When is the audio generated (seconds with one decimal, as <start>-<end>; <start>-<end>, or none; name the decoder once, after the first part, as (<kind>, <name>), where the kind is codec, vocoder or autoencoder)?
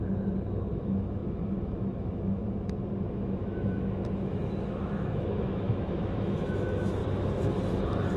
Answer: 0.0-2.4 (autoencoder, DAC-VAE); 3.1-7.0